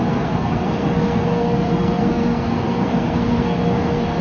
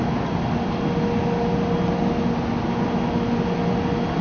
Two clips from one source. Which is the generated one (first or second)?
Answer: first